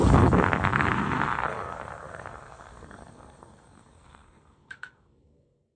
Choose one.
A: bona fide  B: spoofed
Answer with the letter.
B